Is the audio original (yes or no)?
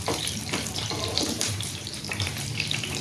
no